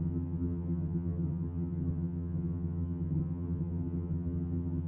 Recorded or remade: remade